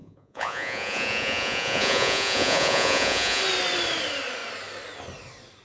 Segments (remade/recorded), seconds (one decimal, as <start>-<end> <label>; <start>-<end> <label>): 0.0-3.4 remade; 3.4-5.6 recorded